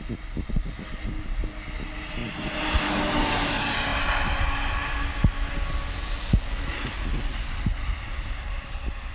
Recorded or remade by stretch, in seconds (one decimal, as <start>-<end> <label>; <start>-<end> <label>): 0.0-2.2 recorded; 2.2-2.8 remade; 2.8-3.9 recorded; 3.9-4.6 remade; 4.6-8.1 recorded; 8.1-8.7 remade; 8.7-9.1 recorded